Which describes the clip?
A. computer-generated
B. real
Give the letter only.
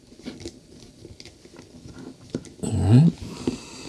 B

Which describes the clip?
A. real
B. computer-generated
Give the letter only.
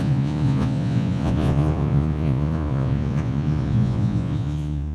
B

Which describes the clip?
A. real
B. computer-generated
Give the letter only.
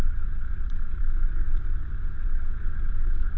B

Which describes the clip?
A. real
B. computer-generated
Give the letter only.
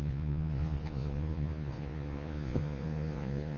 B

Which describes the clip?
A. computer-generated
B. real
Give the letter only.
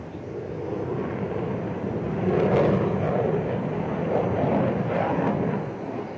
B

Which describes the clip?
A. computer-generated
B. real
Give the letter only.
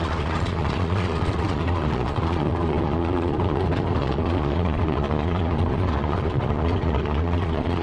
A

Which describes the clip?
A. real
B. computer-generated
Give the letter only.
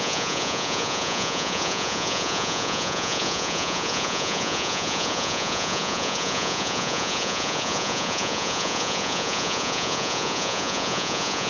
B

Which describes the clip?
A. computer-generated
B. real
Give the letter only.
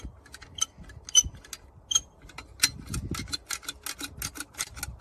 B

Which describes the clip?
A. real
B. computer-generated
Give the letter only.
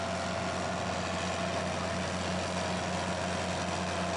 A